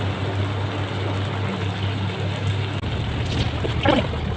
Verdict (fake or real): real